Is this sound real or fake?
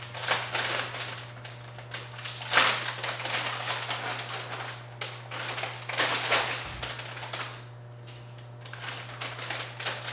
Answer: real